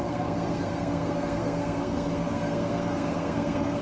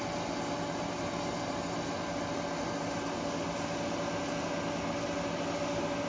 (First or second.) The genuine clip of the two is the second